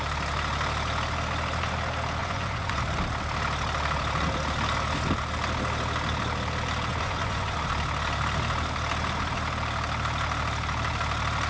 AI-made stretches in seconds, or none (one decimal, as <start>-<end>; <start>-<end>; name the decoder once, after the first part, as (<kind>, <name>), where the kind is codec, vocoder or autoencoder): 2.2-2.8 (vocoder, Vocos); 6.9-7.7